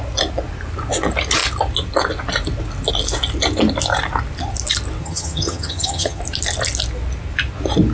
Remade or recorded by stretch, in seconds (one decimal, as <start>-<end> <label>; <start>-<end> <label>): 0.0-5.0 recorded; 5.0-6.2 remade; 6.2-7.9 recorded